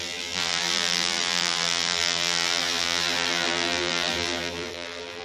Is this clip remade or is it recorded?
remade